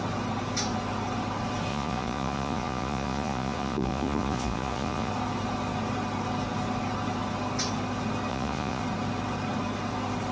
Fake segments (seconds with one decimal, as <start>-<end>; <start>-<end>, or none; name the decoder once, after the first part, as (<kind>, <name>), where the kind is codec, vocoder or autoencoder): 1.7-5.1 (vocoder, Vocos); 8.3-8.8